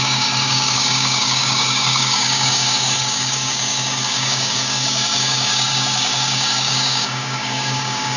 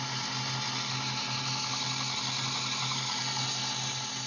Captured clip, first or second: second